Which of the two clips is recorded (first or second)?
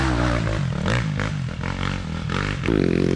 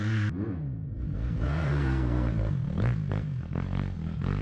first